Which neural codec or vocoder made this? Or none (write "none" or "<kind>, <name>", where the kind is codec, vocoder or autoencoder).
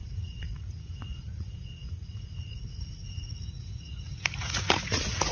vocoder, Vocos